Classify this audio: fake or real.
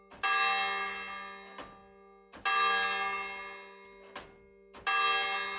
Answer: real